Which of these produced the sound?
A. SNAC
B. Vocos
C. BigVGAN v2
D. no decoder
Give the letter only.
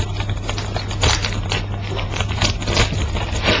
D